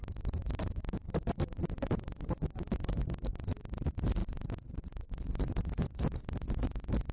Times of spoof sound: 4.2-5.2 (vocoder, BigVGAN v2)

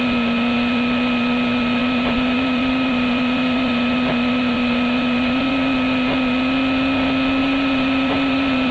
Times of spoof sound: 1.8-5.5 (vocoder, BigVGAN v2); 7.4-8.7

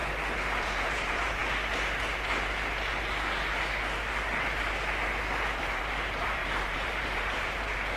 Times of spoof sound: 0.6-1.4 (vocoder, BigVGAN v2); 5.6-8.0

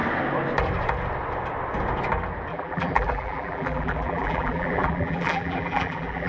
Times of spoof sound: 2.5-6.3 (vocoder, BigVGAN v2)

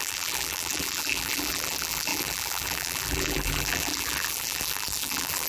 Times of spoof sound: 0.0-5.5 (vocoder, BigVGAN v2)

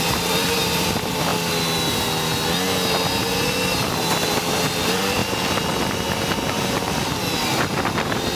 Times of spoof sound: 0.0-1.3 (vocoder, BigVGAN v2); 4.1-5.2; 7.0-8.4

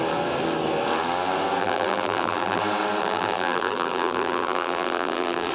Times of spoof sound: 1.6-2.6 (vocoder, BigVGAN v2); 3.0-5.5